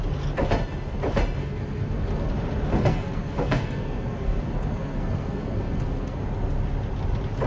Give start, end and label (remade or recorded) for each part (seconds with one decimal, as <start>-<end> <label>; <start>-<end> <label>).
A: 0.0-1.4 recorded; 1.4-2.3 remade; 2.3-2.7 recorded; 2.7-6.2 remade; 6.2-7.5 recorded